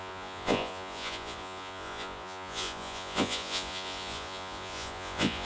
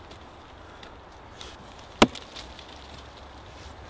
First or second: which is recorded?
second